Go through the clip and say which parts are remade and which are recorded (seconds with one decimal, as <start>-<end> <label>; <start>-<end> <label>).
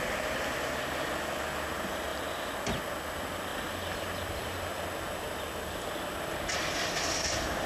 0.0-7.7 recorded